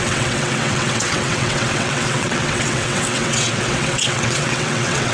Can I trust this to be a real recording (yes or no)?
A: no